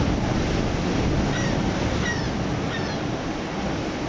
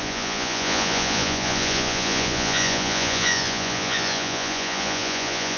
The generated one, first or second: second